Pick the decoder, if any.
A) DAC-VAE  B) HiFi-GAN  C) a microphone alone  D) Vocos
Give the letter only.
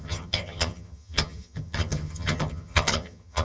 B